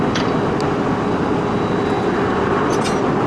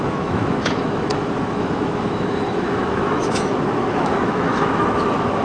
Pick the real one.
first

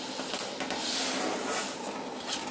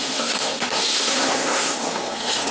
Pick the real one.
first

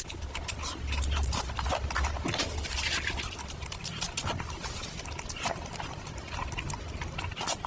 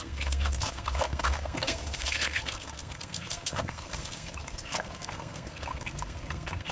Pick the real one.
first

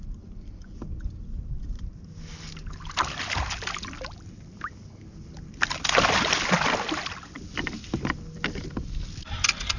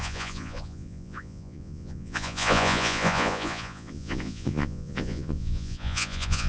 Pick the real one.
first